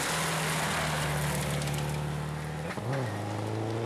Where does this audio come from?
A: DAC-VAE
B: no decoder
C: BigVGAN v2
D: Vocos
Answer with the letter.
B